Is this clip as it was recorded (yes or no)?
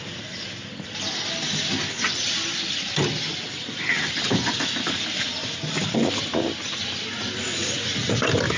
yes